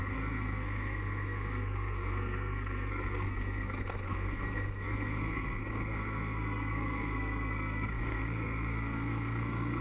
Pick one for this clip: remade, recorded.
remade